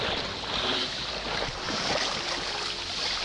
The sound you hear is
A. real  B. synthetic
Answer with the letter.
A